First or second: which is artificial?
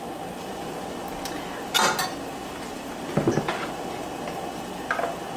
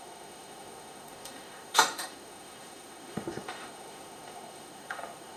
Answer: second